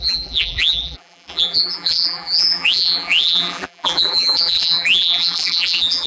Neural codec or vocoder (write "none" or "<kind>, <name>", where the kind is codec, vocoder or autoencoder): vocoder, BigVGAN v2